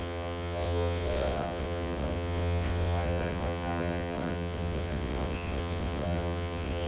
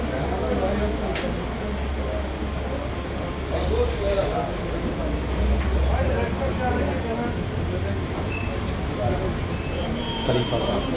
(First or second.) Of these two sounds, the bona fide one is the second